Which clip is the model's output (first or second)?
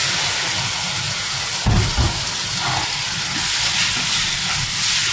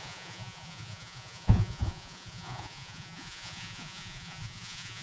second